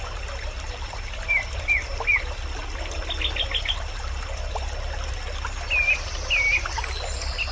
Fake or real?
real